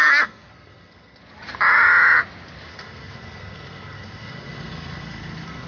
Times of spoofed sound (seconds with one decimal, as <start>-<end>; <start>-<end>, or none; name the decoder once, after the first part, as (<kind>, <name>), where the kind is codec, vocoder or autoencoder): 0.0-1.2 (codec, SNAC); 2.7-5.7